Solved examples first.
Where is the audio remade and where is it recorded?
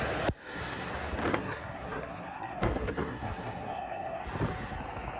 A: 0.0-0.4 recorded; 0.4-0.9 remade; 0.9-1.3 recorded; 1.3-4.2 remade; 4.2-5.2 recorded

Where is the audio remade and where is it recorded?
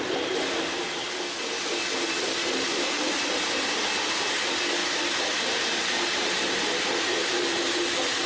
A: 0.0-2.4 recorded; 2.4-3.7 remade; 3.7-4.8 recorded; 4.8-8.3 remade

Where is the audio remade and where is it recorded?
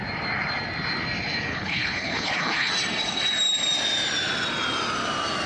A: 0.0-1.5 recorded; 1.5-2.7 remade; 2.7-5.5 recorded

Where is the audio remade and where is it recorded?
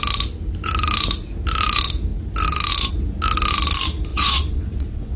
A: 0.0-4.1 recorded; 4.1-5.2 remade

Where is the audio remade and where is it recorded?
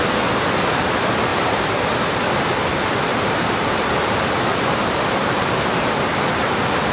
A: 0.0-1.3 recorded; 1.3-2.2 remade; 2.2-3.1 recorded; 3.1-5.1 remade; 5.1-6.9 recorded